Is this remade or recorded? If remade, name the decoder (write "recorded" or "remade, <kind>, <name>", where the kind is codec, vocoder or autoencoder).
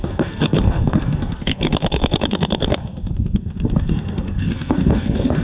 remade, codec, SNAC